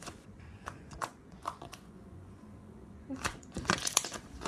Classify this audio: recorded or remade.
remade